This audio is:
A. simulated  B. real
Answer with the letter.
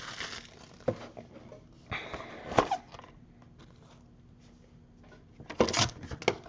B